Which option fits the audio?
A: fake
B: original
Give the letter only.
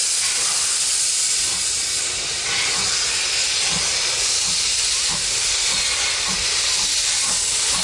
B